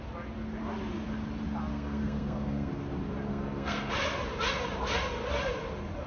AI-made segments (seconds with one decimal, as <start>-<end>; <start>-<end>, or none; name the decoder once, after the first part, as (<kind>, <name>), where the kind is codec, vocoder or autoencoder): 1.7-2.7 (codec, SNAC); 3.3-3.9